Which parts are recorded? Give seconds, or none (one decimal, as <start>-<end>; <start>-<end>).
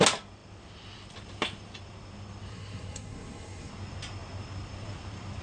0.0-2.5; 3.7-5.4